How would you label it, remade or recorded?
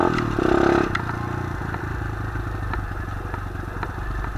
recorded